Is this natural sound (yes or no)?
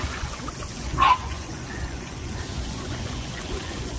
no